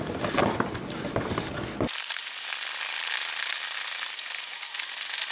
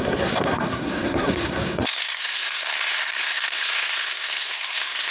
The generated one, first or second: second